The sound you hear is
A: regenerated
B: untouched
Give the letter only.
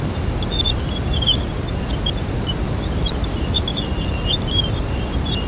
B